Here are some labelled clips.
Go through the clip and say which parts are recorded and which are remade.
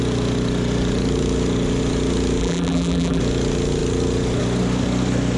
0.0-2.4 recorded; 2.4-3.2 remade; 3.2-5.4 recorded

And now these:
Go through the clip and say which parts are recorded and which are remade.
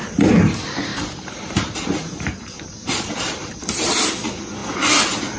0.0-0.9 recorded; 0.9-4.1 remade; 4.1-5.4 recorded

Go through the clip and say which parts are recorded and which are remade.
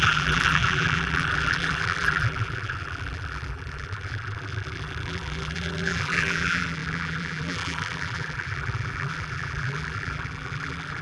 0.0-11.0 remade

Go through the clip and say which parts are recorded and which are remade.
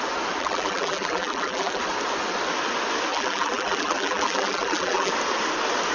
0.0-0.4 recorded; 0.4-1.8 remade; 1.8-3.1 recorded; 3.1-5.1 remade; 5.1-5.9 recorded